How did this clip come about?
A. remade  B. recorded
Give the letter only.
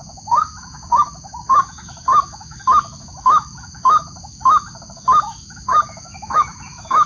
A